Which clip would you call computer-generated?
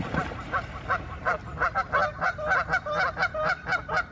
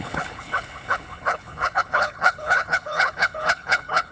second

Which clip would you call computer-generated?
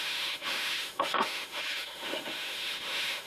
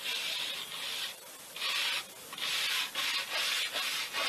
first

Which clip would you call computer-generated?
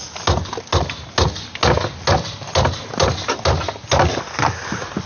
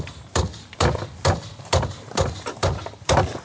second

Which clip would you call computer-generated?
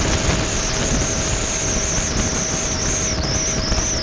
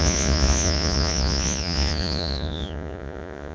second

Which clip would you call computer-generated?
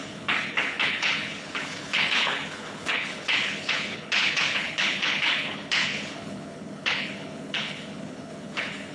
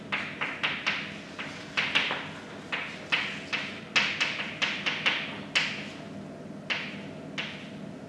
first